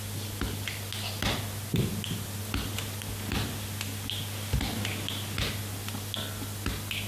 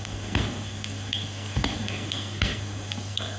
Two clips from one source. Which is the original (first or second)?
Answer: first